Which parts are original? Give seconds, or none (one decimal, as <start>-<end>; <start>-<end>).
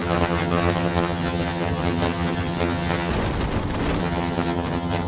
3.1-4.0